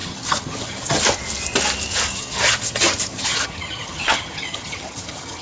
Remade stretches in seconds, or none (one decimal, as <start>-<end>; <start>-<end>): 0.0-1.0; 2.1-5.4